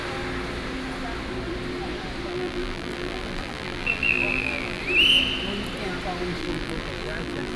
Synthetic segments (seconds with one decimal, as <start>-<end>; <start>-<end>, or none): 2.3-4.8; 6.4-7.6